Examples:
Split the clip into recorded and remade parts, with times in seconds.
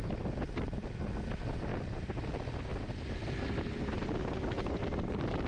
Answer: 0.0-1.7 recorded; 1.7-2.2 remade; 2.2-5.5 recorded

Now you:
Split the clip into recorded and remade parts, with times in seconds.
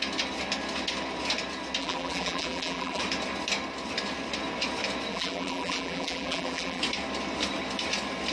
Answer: 0.0-1.8 recorded; 1.8-3.0 remade; 3.0-5.1 recorded; 5.1-6.8 remade; 6.8-8.3 recorded